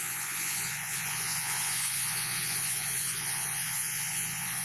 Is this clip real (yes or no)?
no